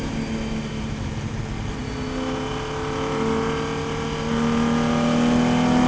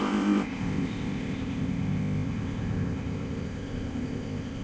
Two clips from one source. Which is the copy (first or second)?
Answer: second